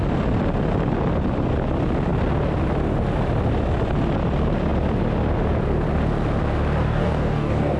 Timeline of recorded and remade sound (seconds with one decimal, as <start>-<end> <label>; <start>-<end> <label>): 0.0-6.8 recorded; 6.8-7.8 remade